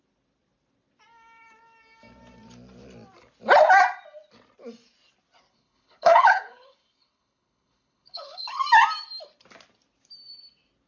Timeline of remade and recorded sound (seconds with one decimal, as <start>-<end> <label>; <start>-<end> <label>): 0.0-5.5 recorded; 5.5-8.6 remade; 8.6-10.9 recorded